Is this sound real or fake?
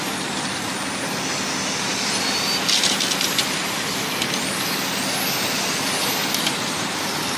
real